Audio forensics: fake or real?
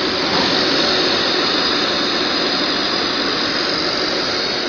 real